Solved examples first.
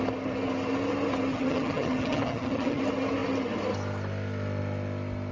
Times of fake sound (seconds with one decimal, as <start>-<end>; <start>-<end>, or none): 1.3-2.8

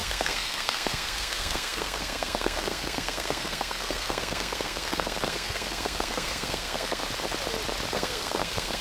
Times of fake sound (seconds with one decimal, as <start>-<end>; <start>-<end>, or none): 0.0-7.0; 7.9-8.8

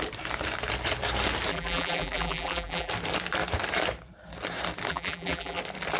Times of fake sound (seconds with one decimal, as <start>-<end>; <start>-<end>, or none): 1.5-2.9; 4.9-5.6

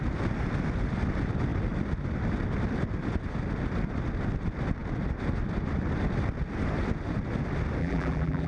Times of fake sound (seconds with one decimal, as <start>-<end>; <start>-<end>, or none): 7.8-8.5